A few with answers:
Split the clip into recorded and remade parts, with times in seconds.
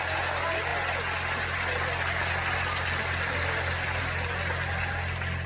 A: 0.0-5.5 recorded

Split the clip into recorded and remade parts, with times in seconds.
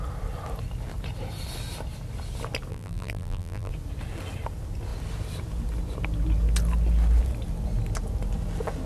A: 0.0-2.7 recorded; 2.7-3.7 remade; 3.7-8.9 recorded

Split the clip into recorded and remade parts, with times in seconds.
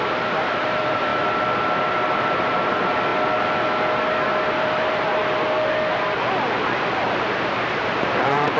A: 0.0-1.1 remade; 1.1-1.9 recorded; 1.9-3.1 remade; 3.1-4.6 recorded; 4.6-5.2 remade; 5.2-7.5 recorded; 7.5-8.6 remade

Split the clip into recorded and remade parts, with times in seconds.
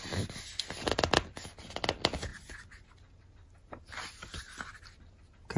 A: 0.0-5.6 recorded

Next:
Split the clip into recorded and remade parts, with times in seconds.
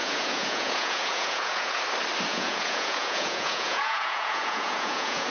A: 0.0-1.8 remade; 1.8-2.3 recorded; 2.3-5.3 remade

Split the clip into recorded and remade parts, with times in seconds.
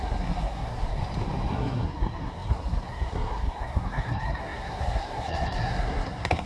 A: 0.0-1.0 remade; 1.0-1.5 recorded; 1.5-6.5 remade